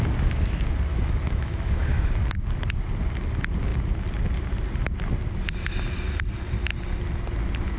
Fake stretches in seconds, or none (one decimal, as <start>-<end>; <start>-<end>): 0.9-2.1